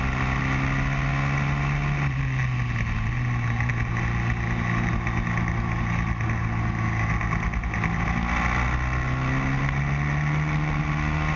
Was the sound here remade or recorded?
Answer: recorded